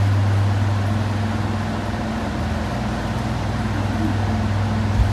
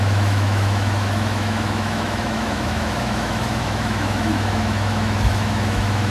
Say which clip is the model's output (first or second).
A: second